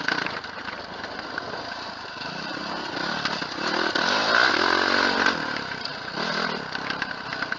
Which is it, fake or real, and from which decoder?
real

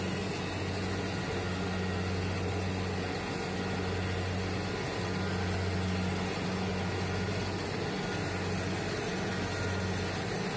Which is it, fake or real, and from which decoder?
real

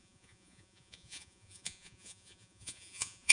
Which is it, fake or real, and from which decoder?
fake, vocoder, Vocos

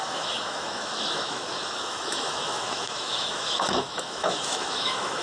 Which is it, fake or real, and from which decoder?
fake, autoencoder, DAC-VAE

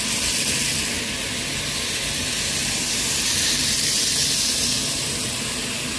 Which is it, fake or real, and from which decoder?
real